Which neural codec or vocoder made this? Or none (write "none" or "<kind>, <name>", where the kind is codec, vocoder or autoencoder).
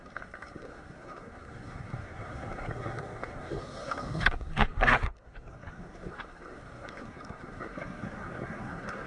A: codec, SNAC